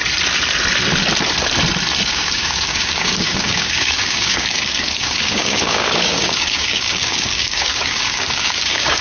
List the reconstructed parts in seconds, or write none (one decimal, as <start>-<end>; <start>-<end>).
2.1-9.0